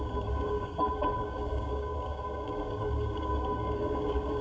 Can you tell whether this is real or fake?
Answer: fake